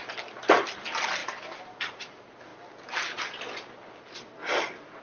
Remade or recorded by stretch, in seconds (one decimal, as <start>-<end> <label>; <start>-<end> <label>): 0.0-5.0 recorded